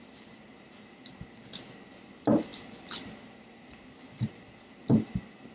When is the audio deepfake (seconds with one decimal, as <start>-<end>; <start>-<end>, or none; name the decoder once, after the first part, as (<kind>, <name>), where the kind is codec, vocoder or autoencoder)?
0.0-5.5 (vocoder, BigVGAN v2)